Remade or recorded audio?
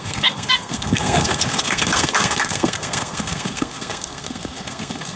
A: remade